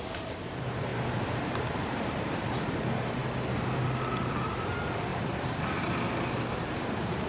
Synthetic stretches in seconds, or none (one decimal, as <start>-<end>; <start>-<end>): 0.0-0.9; 1.4-3.2; 4.5-5.1; 5.8-7.3